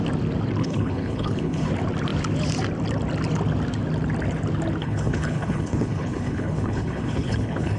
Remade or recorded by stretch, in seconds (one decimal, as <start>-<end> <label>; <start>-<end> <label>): 0.0-0.6 recorded; 0.6-1.7 remade; 1.7-4.8 recorded; 4.8-7.8 remade